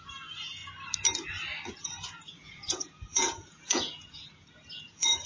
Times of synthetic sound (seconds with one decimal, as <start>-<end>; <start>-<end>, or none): 0.0-0.6; 1.7-5.3

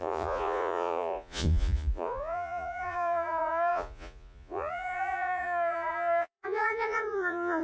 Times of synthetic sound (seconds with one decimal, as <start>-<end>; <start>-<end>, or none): 0.0-7.6

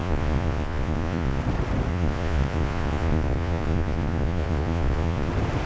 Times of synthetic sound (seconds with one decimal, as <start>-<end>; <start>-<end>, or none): 0.0-1.4; 1.9-5.3

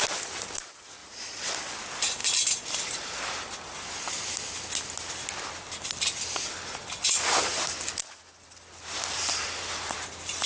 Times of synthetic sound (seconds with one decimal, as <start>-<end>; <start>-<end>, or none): 1.0-1.5

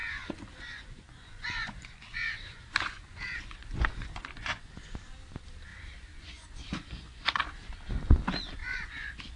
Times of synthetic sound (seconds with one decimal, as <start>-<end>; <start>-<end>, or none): 0.0-4.9; 5.7-7.7; 8.6-9.4

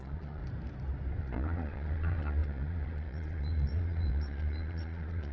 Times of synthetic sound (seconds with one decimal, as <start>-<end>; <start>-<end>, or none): 0.0-0.4; 1.2-5.3